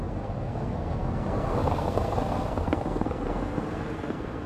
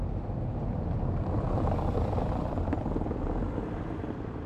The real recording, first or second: second